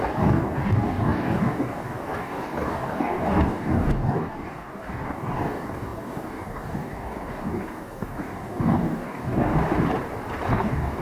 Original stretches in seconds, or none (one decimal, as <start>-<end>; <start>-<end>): 9.5-10.5